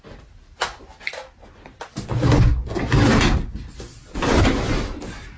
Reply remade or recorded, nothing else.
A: recorded